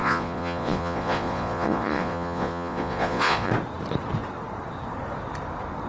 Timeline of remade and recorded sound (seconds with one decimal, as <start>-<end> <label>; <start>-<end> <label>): 0.0-3.5 remade; 3.5-5.9 recorded